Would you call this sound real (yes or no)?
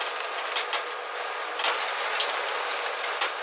yes